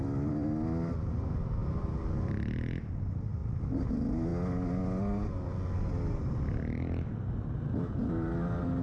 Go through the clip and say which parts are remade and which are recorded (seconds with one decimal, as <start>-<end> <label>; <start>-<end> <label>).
0.0-1.6 recorded; 1.6-3.0 remade; 3.0-3.4 recorded; 3.4-3.9 remade; 3.9-8.8 recorded

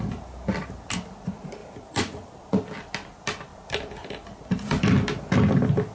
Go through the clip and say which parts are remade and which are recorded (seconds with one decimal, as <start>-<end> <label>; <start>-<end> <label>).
0.0-1.6 recorded; 1.6-2.8 remade; 2.8-5.9 recorded

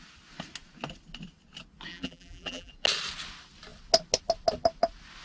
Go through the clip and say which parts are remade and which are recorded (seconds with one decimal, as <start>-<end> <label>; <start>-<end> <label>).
0.0-1.9 recorded; 1.9-2.7 remade; 2.7-5.2 recorded

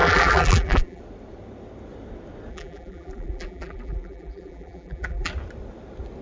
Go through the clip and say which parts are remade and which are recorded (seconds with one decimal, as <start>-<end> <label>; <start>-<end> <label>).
0.0-1.0 remade; 1.0-2.5 recorded; 2.5-5.3 remade; 5.3-6.2 recorded

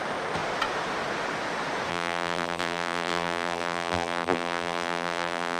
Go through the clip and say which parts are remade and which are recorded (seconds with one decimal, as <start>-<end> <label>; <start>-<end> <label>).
0.0-1.9 recorded; 1.9-5.6 remade

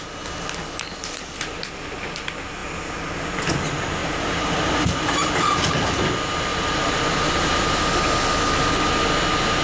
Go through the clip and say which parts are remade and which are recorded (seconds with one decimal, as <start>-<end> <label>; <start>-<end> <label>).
0.0-1.0 recorded; 1.0-1.6 remade; 1.6-4.0 recorded; 4.0-5.7 remade; 5.7-6.5 recorded; 6.5-7.6 remade; 7.6-9.6 recorded

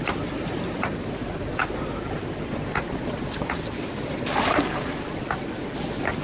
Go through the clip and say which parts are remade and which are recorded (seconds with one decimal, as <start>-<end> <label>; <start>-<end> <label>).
0.0-1.6 remade; 1.6-2.5 recorded; 2.5-6.2 remade

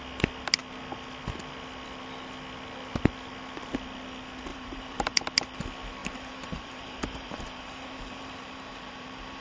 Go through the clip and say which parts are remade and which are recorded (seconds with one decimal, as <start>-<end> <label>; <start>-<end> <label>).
0.0-4.5 recorded; 4.5-5.2 remade; 5.2-6.0 recorded; 6.0-9.4 remade